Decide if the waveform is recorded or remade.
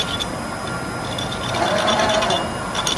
recorded